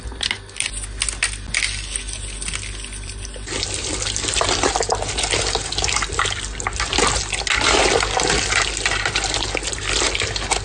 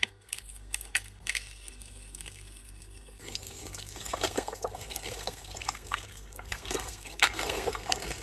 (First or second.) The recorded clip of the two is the first